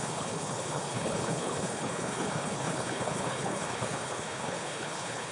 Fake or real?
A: fake